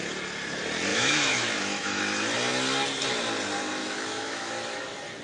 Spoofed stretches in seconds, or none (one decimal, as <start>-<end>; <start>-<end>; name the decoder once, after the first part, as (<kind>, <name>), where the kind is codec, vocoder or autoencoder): 0.9-2.0 (autoencoder, DAC-VAE); 3.8-4.5